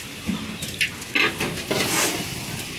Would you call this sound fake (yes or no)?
no